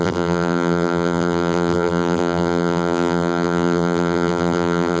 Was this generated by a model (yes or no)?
yes